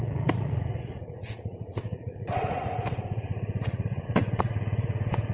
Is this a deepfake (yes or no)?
yes